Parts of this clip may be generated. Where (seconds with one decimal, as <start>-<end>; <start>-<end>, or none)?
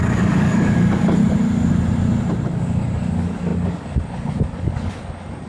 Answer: 0.0-1.2; 2.5-5.5